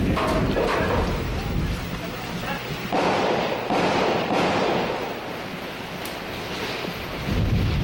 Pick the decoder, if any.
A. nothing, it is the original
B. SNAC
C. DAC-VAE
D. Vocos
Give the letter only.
A